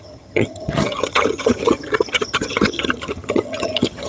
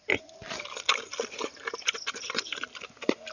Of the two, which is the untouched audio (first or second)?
second